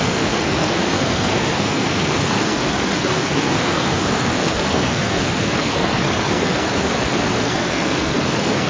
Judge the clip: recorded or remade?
remade